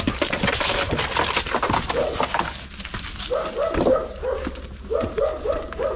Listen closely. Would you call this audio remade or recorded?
recorded